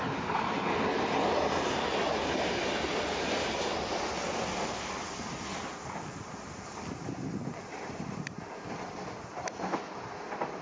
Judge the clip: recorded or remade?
recorded